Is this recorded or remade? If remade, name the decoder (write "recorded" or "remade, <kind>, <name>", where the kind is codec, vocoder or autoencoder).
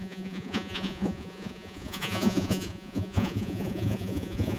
remade, vocoder, Vocos